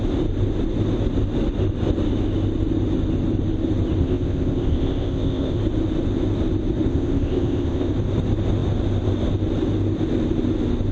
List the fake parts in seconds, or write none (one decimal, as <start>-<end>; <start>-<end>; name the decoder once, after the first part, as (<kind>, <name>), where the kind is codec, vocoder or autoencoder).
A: 4.0-5.6 (codec, ZipCodec); 6.9-7.9